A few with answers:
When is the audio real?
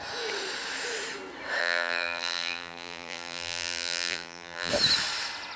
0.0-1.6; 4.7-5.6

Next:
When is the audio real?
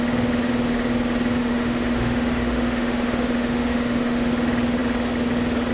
0.0-1.4; 4.3-5.7